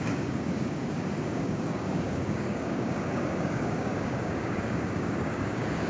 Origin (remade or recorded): remade